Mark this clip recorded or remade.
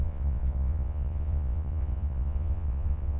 remade